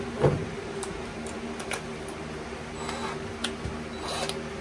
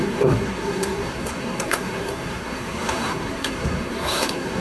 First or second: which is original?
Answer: first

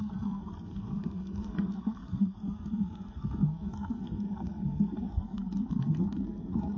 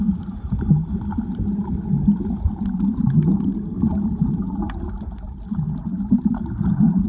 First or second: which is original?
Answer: second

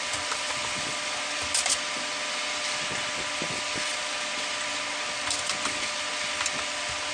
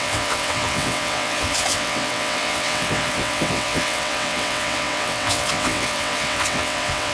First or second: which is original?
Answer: first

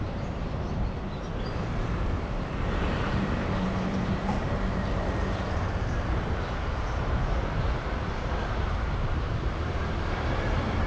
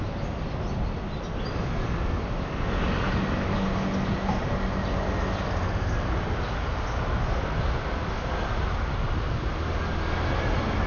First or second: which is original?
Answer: second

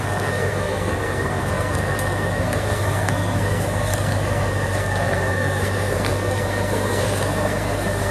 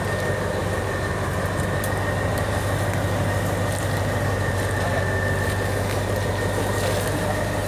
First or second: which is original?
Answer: second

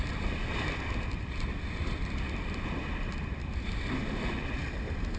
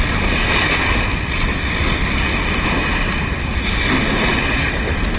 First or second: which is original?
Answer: second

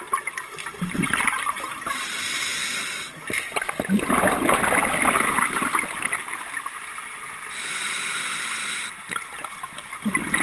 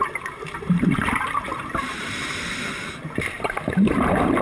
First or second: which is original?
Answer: first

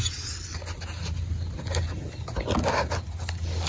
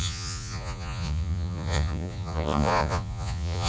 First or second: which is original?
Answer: first